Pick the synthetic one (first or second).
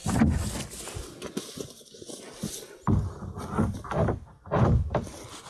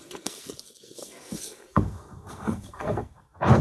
second